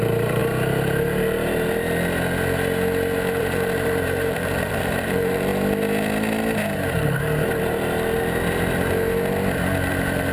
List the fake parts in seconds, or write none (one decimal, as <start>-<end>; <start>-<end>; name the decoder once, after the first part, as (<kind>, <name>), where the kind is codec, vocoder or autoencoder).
0.0-0.4 (vocoder, BigVGAN v2); 3.4-5.5; 9.9-10.3